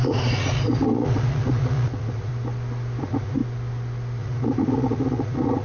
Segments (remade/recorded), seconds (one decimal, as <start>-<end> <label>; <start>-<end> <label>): 0.0-2.3 remade; 2.3-3.0 recorded; 3.0-3.4 remade; 3.4-4.2 recorded; 4.2-5.6 remade